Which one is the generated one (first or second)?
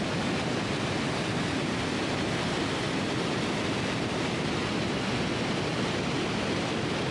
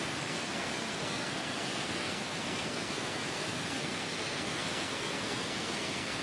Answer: second